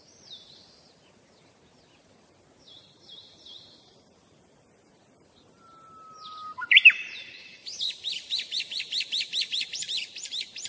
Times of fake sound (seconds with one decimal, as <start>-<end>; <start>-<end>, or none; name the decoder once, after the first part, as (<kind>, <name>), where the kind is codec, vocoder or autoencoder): 6.4-10.7 (vocoder, BigVGAN v2)